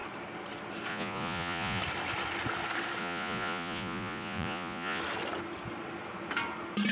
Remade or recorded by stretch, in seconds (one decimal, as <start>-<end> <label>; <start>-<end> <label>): 0.0-0.9 recorded; 0.9-1.8 remade; 1.8-3.0 recorded; 3.0-5.0 remade; 5.0-6.9 recorded